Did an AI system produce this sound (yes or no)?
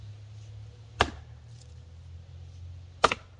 no